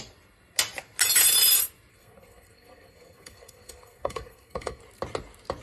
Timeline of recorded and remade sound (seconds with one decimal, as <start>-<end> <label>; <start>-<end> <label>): 0.0-1.9 recorded; 1.9-4.8 remade; 4.8-5.6 recorded